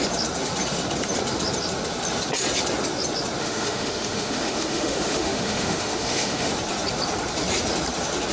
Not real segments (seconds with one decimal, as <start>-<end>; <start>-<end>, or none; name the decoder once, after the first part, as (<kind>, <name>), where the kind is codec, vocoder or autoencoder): 3.4-6.5 (autoencoder, DAC-VAE)